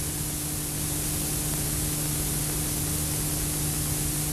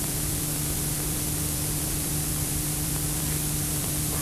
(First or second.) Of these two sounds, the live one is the first